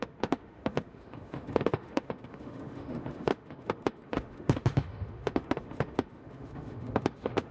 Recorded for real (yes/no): no